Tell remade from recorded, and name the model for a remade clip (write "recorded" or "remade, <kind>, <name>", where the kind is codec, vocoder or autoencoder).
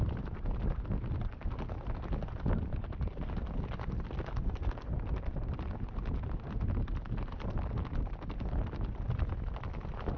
recorded